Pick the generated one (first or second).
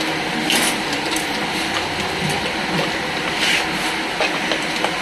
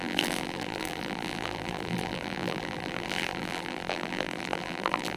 second